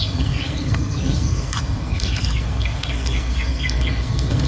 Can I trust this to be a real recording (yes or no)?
no